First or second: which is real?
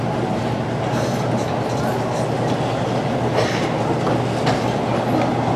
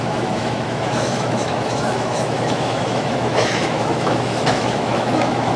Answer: first